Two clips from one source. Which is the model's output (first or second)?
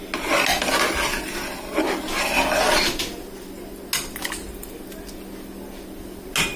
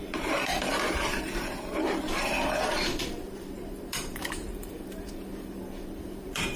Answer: second